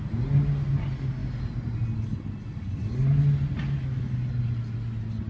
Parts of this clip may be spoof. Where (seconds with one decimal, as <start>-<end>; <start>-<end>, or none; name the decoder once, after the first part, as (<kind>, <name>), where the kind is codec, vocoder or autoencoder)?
none